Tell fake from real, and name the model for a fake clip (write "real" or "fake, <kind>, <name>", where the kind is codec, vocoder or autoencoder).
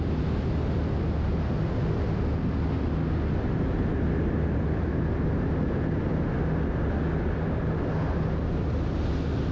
real